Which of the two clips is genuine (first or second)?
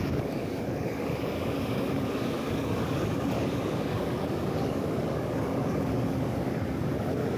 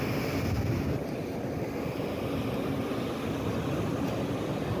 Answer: second